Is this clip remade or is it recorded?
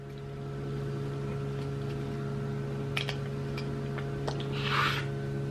recorded